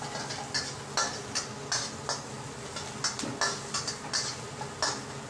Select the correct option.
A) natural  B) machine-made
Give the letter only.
A